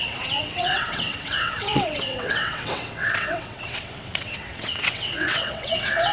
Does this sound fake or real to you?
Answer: fake